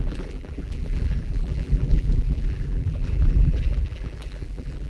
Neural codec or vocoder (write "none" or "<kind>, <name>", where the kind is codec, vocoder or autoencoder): vocoder, BigVGAN v2